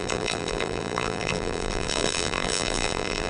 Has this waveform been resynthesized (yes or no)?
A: yes